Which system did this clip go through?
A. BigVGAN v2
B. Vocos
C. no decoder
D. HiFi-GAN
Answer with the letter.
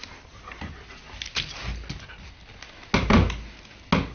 C